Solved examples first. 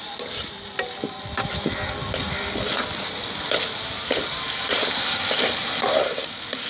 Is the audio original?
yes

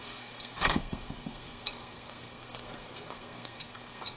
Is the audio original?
no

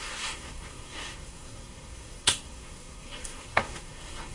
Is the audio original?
no